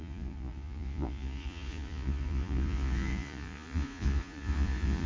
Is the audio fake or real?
fake